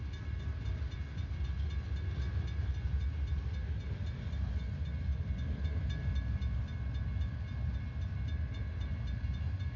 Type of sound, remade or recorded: recorded